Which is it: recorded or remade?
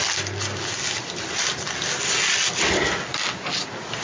recorded